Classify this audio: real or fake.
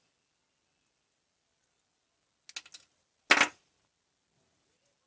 real